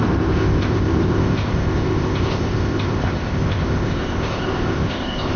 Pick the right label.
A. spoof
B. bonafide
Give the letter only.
A